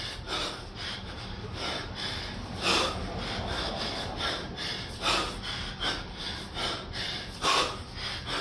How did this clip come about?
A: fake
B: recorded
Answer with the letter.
B